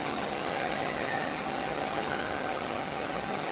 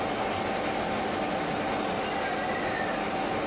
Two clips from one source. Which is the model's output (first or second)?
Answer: first